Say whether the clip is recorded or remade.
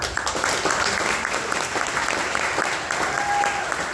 recorded